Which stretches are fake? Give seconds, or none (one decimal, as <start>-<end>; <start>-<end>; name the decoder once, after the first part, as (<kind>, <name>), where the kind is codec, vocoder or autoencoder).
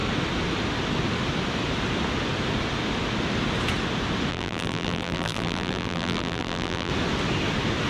4.3-6.9 (vocoder, BigVGAN v2)